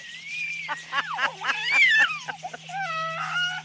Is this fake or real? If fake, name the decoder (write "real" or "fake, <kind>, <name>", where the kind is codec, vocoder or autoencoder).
real